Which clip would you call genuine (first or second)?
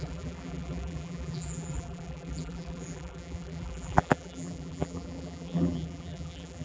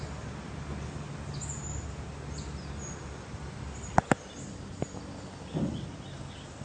second